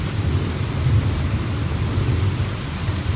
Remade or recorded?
recorded